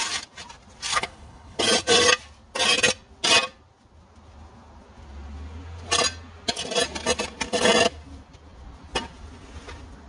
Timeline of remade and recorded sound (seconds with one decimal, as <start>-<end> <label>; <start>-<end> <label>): 0.0-0.9 recorded; 0.9-1.6 remade; 1.6-10.1 recorded